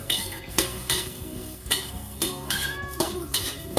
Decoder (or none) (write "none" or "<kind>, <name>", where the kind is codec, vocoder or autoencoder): codec, SNAC